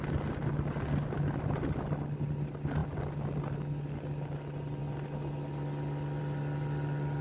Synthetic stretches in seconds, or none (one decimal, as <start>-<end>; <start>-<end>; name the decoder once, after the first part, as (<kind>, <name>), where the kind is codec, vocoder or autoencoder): none